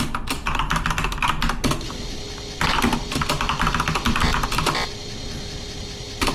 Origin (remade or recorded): recorded